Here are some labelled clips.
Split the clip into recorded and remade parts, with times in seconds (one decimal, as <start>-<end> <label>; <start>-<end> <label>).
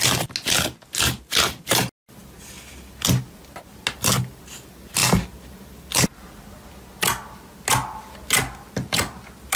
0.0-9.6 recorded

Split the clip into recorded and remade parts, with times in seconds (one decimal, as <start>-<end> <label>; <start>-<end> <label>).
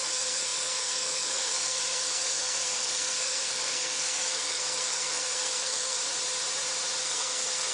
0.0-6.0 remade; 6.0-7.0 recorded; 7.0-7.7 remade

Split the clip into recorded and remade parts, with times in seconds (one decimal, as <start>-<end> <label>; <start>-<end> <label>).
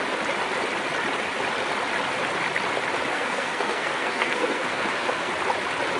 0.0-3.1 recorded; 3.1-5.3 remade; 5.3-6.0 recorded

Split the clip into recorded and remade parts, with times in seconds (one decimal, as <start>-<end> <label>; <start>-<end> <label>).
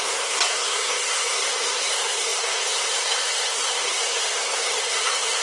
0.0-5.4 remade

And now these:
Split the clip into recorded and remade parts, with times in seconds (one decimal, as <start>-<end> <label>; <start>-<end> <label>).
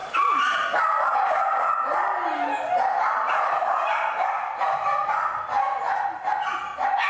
0.0-7.1 recorded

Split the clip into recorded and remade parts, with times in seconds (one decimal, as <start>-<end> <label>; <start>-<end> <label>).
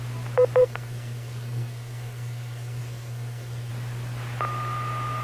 0.0-0.6 recorded; 0.6-3.7 remade; 3.7-5.2 recorded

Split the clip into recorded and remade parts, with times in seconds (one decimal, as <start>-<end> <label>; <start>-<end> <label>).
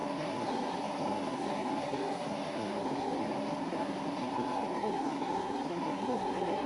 0.0-6.7 remade